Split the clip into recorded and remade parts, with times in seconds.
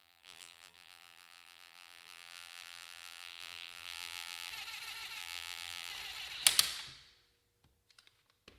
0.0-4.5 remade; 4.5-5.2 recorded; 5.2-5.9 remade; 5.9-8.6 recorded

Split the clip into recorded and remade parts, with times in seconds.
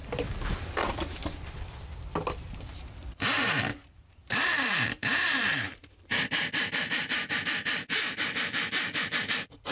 0.0-2.4 recorded; 2.4-5.8 remade; 5.8-6.4 recorded; 6.4-9.7 remade